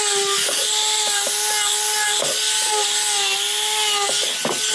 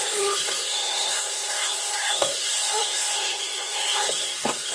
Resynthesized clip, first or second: second